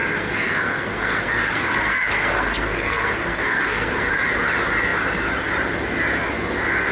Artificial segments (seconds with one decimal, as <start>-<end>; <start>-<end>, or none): 0.0-4.1